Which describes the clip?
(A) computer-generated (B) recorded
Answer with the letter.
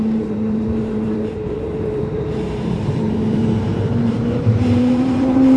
A